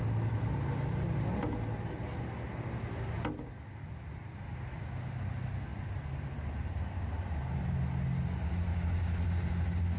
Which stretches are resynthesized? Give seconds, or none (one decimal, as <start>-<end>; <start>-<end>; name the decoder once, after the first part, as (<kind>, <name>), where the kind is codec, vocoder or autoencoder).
none